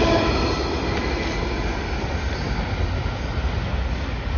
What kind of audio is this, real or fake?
real